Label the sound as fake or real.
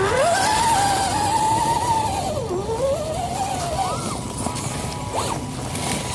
real